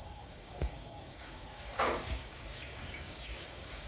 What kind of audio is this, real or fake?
fake